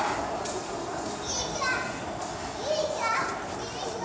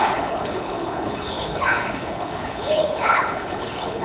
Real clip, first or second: first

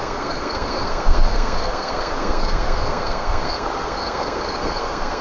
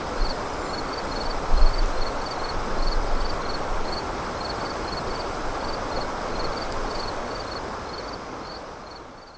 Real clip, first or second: second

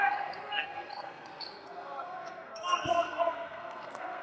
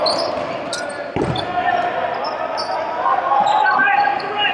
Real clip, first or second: second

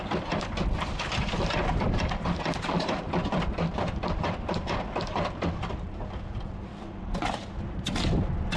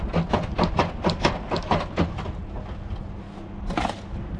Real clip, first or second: second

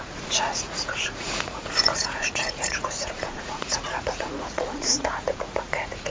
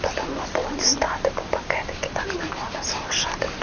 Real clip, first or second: second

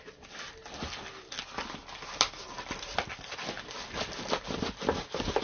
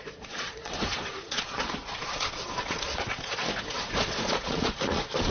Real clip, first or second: first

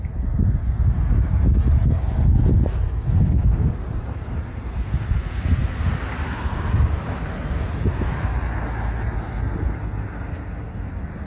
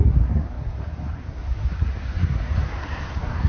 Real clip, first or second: first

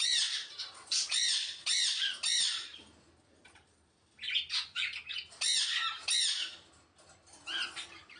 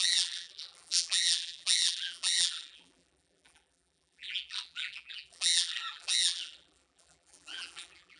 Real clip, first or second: first